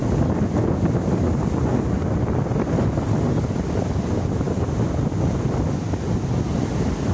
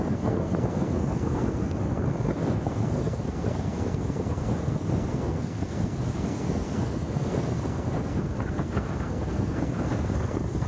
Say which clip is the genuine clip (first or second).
first